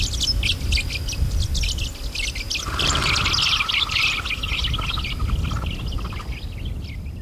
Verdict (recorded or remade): recorded